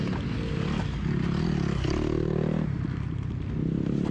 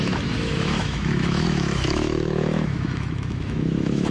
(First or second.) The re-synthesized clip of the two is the second